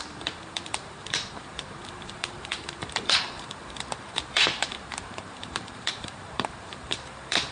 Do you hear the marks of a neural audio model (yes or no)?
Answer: yes